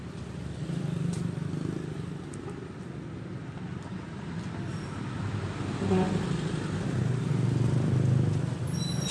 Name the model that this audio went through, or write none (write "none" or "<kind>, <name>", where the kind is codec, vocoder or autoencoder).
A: none